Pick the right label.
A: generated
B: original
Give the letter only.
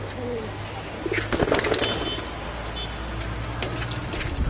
B